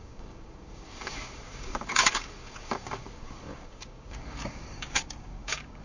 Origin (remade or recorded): remade